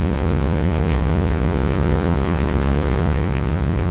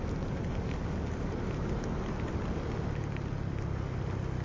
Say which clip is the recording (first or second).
second